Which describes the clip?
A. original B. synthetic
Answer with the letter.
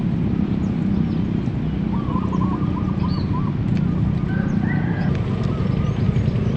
A